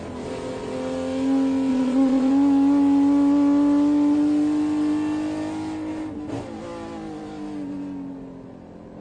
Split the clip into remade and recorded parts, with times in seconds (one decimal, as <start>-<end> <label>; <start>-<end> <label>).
0.0-1.7 recorded; 1.7-2.3 remade; 2.3-9.0 recorded